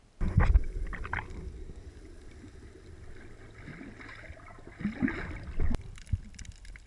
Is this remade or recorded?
recorded